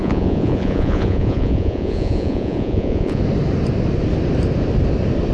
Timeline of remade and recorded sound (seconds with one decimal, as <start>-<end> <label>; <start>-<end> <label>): 0.0-3.2 remade; 3.2-5.3 recorded